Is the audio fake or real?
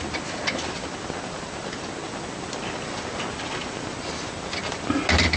real